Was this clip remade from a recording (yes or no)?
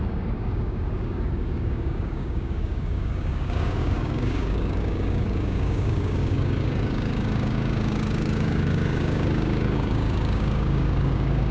yes